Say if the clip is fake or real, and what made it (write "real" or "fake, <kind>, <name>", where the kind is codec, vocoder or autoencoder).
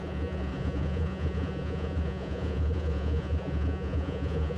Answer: fake, vocoder, Vocos